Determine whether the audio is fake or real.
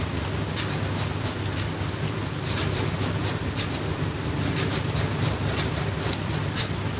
real